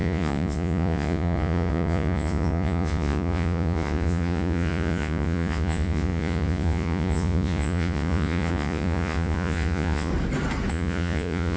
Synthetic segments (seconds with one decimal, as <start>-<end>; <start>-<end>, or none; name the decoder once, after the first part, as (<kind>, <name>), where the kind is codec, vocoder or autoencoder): 0.0-10.1 (vocoder, Vocos); 10.7-11.6